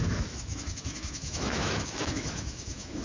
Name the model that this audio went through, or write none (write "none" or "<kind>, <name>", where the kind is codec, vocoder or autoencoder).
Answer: autoencoder, DAC-VAE